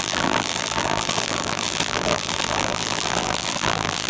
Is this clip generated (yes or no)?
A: yes